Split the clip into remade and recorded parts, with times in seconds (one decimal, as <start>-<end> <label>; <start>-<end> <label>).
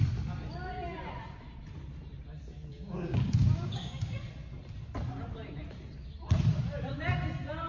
0.0-2.7 recorded; 2.7-4.2 remade; 4.2-7.7 recorded